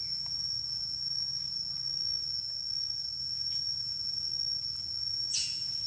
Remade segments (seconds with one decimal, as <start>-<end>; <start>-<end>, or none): 0.0-1.4; 3.2-4.3; 5.1-5.9